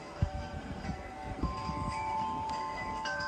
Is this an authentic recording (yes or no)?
no